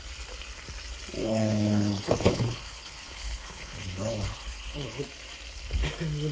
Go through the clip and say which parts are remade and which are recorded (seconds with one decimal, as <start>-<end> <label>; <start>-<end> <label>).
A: 0.0-1.2 recorded; 1.2-5.0 remade; 5.0-6.3 recorded